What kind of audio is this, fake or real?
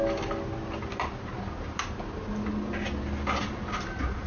real